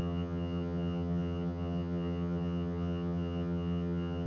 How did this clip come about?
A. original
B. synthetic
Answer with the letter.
B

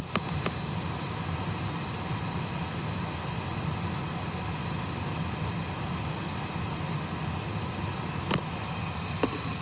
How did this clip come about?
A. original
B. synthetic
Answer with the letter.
A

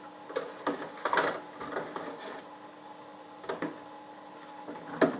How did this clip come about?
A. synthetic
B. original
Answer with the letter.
B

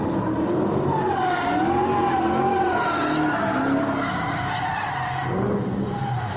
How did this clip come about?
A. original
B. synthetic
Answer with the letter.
A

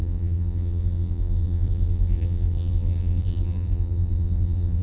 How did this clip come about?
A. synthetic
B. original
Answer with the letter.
A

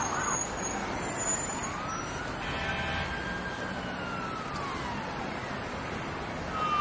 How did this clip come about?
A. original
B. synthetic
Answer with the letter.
A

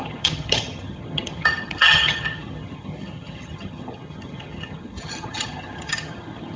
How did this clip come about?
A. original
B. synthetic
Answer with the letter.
B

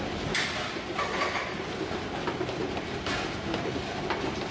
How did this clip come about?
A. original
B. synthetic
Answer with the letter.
A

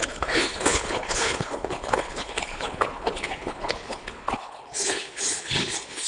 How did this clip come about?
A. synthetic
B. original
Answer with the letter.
A